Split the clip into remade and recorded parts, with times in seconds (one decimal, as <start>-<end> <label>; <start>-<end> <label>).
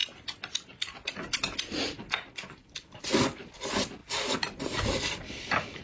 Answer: 0.0-5.8 recorded